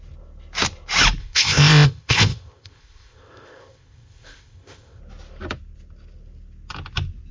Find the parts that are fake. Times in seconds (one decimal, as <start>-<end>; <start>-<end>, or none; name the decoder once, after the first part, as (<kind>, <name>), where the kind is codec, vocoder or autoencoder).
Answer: 1.2-5.0 (codec, ZipCodec)